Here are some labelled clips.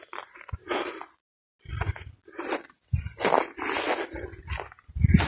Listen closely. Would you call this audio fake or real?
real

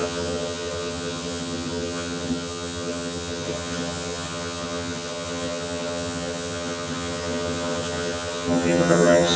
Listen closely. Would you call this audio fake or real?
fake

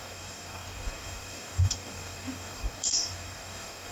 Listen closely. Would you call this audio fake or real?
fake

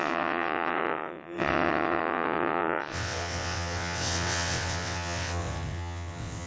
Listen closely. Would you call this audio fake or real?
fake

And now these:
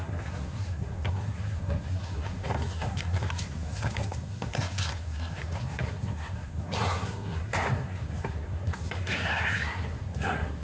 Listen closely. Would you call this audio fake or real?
fake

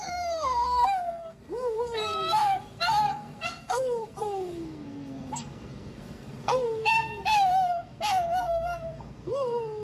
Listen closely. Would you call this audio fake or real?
fake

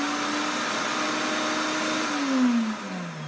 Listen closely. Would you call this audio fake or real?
real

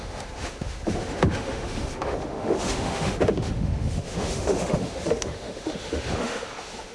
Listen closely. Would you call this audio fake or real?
fake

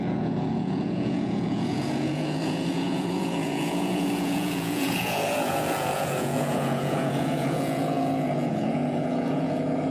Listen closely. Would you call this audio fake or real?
fake